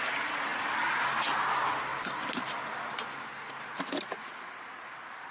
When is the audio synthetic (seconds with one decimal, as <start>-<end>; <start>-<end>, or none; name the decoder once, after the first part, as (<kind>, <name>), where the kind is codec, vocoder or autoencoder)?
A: none